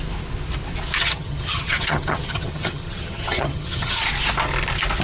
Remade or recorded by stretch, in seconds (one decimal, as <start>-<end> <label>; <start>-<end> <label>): 0.0-1.0 recorded; 1.0-4.0 remade; 4.0-5.0 recorded